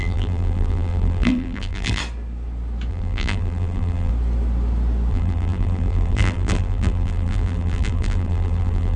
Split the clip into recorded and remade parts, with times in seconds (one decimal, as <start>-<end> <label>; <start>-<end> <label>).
0.0-2.0 remade; 2.0-2.9 recorded; 2.9-4.1 remade; 4.1-5.1 recorded; 5.1-9.0 remade